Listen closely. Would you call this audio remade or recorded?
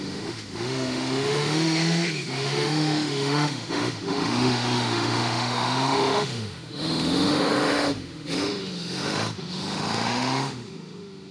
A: remade